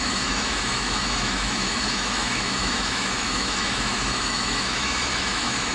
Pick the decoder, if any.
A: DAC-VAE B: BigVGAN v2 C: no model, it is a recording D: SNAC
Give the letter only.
A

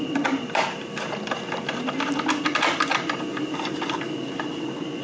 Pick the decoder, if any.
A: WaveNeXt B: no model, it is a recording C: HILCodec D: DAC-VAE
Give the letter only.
B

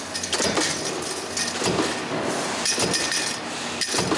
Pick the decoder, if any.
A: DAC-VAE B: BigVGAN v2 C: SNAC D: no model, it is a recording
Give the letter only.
D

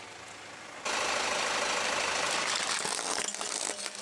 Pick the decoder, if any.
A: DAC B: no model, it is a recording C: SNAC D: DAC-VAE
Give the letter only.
B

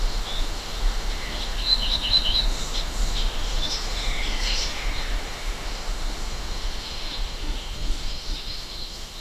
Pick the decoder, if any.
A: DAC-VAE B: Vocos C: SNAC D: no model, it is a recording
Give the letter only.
A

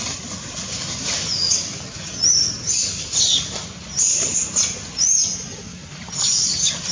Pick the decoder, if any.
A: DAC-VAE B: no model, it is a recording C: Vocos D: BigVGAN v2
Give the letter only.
B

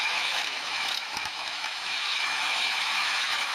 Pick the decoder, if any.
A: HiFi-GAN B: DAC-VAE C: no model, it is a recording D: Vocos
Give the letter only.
B